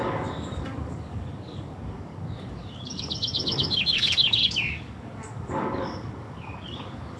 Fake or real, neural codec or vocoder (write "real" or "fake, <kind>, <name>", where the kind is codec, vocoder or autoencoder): fake, codec, DAC